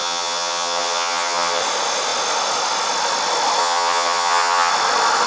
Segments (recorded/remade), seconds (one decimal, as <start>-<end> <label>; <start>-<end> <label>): 0.0-1.6 remade; 1.6-3.6 recorded; 3.6-4.7 remade; 4.7-5.3 recorded